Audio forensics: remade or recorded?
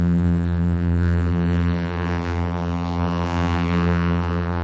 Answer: remade